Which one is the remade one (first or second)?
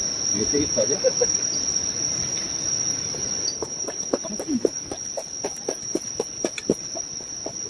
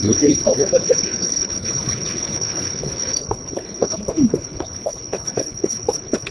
second